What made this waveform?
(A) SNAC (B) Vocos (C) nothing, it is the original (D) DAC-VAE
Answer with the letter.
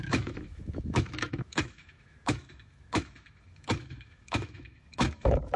D